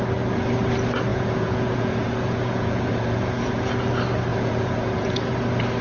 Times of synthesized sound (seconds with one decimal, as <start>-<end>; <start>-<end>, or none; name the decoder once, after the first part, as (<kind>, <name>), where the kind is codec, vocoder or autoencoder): 1.1-3.7 (vocoder, Vocos); 4.3-5.3